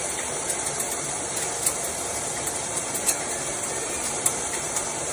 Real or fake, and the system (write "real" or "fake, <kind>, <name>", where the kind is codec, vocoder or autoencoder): fake, vocoder, BigVGAN v2